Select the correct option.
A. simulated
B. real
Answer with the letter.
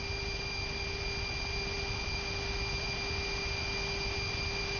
B